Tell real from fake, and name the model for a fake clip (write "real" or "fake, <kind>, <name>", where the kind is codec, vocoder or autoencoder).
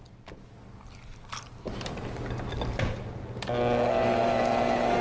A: real